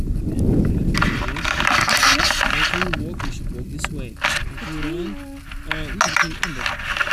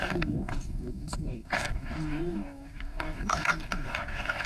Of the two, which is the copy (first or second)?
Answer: second